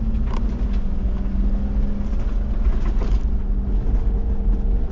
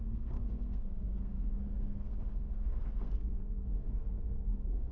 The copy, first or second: second